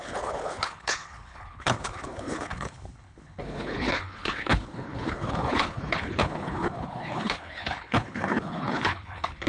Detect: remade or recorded remade